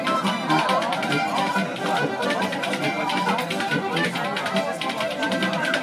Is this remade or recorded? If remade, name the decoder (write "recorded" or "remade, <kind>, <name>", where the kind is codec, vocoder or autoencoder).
recorded